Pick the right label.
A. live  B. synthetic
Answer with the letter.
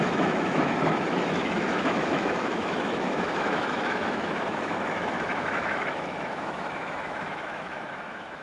B